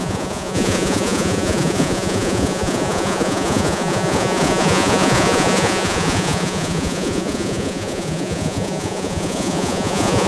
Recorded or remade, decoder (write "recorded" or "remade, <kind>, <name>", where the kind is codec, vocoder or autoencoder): remade, vocoder, Vocos